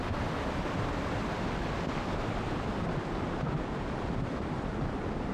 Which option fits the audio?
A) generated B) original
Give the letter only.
B